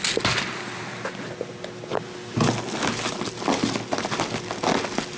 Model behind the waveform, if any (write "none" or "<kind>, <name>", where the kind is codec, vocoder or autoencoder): none